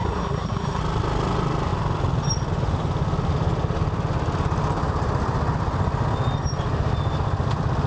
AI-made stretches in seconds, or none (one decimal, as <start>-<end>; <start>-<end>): 0.0-0.8